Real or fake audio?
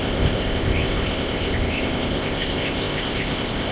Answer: fake